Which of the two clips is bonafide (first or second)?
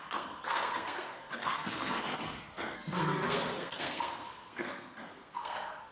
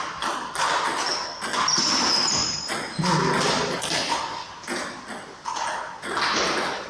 second